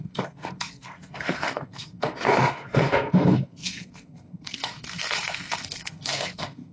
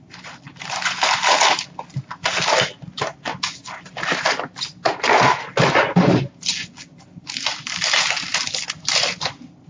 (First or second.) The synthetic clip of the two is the first